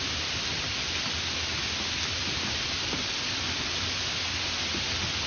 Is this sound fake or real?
real